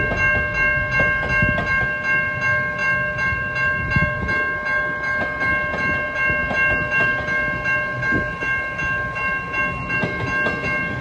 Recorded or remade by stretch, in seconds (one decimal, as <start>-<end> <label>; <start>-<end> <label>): 0.0-11.0 recorded